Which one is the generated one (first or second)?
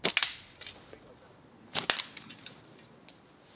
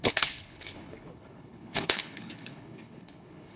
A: second